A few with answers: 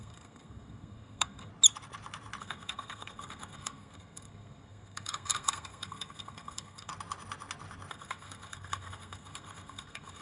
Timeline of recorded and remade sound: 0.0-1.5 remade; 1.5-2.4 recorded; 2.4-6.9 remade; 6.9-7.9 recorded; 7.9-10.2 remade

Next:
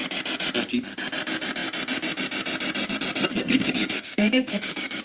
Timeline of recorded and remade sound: 0.0-3.3 recorded; 3.3-5.0 remade

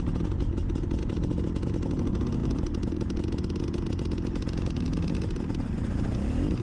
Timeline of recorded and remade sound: 0.0-6.6 recorded